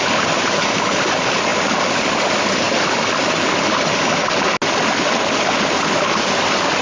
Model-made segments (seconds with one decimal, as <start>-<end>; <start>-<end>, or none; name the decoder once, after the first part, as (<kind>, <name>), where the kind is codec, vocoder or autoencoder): none

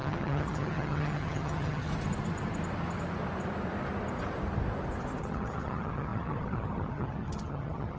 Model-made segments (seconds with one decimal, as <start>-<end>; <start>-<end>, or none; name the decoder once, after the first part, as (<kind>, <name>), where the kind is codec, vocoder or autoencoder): 0.0-1.9 (vocoder, HiFi-GAN); 5.2-8.0

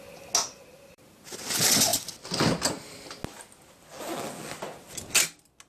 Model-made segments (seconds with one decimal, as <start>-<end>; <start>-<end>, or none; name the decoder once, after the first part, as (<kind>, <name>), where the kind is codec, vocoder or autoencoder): 0.4-1.4 (vocoder, BigVGAN v2)

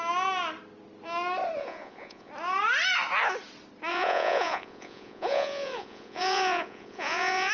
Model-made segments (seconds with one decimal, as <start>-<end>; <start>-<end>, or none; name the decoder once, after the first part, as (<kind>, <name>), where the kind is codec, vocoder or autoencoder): 1.6-2.3 (vocoder, Vocos); 3.9-7.5

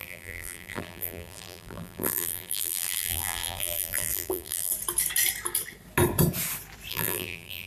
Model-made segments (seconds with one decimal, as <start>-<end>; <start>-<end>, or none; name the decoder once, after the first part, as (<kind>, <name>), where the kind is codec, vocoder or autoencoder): 0.0-4.7 (vocoder, BigVGAN v2); 6.9-7.7